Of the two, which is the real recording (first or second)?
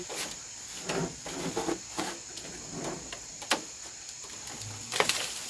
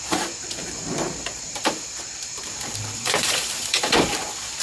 first